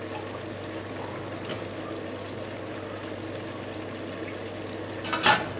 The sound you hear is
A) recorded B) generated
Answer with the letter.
A